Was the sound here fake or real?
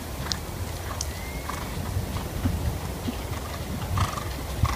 real